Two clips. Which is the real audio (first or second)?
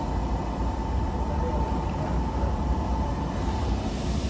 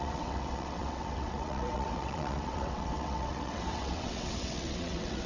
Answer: first